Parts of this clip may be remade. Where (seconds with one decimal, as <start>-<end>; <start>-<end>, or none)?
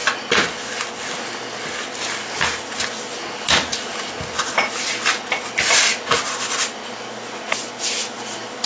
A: none